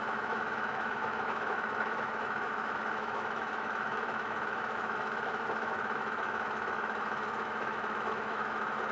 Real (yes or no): no